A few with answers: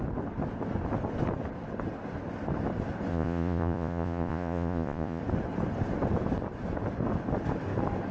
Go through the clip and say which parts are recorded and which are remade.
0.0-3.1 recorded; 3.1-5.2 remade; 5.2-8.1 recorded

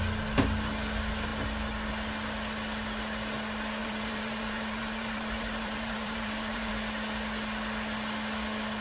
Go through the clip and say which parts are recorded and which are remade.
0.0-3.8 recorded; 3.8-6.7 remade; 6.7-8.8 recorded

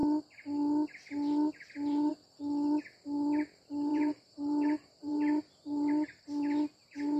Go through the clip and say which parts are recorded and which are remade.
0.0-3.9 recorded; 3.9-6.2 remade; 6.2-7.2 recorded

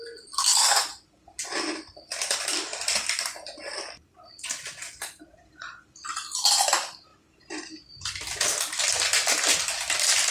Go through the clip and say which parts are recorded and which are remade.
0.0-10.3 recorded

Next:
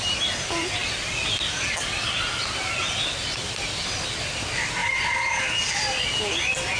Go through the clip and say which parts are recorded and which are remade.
0.0-6.8 recorded

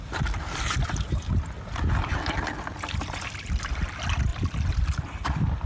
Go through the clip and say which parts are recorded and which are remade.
0.0-5.7 recorded